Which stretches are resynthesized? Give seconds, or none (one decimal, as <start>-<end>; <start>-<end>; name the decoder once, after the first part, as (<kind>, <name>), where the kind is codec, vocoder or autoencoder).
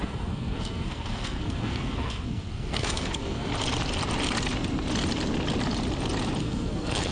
0.0-3.5 (codec, SNAC); 6.4-7.1